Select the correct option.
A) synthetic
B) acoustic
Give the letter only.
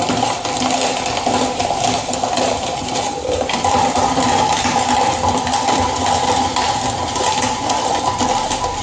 A